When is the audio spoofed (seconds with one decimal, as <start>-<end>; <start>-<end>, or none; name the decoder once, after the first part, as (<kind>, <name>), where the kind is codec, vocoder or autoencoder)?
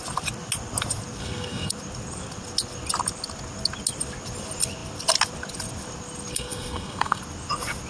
1.2-1.7 (codec, SNAC); 6.3-7.2